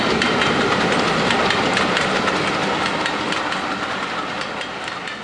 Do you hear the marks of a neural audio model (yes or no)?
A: no